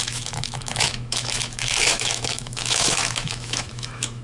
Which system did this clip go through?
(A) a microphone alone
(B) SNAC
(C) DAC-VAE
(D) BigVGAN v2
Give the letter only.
C